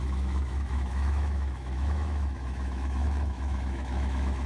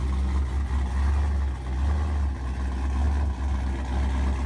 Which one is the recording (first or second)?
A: second